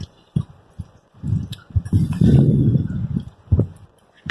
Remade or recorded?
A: remade